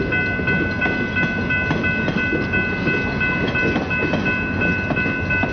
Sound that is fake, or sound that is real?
real